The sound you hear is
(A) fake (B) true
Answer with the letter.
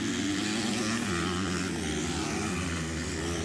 B